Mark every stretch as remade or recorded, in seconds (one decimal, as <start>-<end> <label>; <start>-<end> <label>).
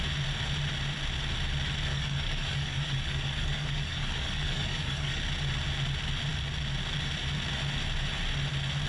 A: 0.0-1.9 recorded; 1.9-5.2 remade; 5.2-8.9 recorded